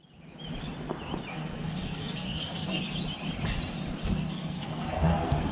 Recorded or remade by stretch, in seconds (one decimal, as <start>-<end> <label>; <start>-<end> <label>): 0.0-1.3 recorded; 1.3-2.8 remade; 2.8-4.0 recorded; 4.0-5.5 remade